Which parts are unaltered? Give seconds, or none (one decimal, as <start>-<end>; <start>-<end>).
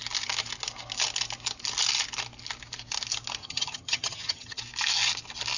0.0-3.4; 4.6-5.6